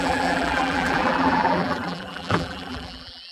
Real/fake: fake